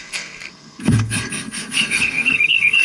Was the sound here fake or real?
fake